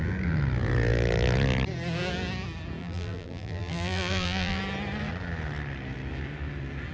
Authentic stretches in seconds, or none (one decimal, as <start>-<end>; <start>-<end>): 0.0-2.8; 4.6-6.9